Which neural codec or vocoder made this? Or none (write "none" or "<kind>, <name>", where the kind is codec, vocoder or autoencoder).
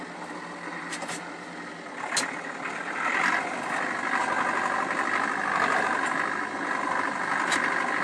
none